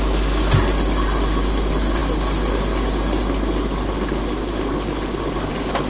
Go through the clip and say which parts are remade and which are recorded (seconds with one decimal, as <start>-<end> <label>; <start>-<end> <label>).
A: 0.0-5.9 recorded